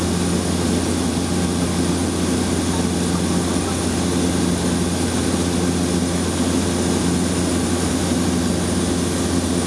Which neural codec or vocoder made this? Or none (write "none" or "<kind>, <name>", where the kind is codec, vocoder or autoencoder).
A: none